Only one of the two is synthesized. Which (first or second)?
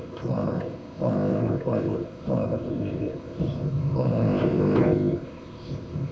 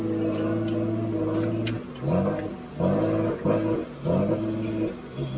first